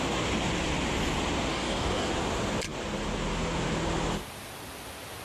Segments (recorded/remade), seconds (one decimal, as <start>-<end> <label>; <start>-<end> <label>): 0.0-1.5 recorded; 1.5-2.1 remade; 2.1-5.2 recorded